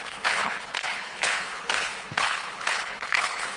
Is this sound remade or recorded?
remade